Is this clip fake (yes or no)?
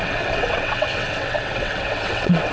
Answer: yes